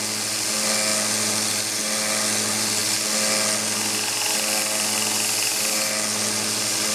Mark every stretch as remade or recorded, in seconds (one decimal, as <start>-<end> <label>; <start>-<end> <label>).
0.0-6.9 recorded